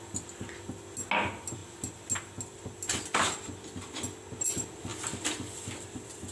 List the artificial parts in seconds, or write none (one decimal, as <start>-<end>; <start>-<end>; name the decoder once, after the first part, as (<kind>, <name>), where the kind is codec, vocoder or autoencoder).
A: 4.9-6.3 (vocoder, BigVGAN v2)